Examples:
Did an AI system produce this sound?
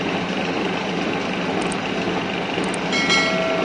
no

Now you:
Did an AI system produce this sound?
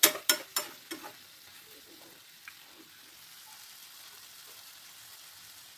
no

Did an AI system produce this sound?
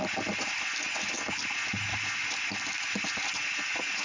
no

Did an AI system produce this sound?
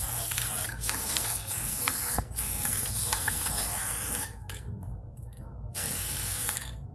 yes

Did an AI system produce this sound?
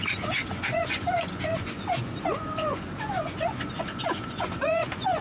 yes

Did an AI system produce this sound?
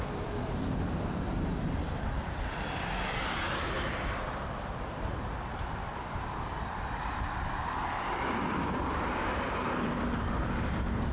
yes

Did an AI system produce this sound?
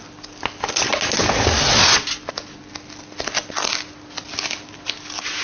no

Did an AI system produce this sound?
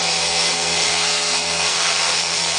yes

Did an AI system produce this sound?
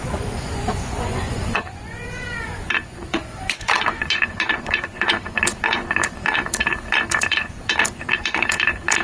yes